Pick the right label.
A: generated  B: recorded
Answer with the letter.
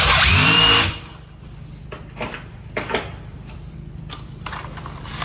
A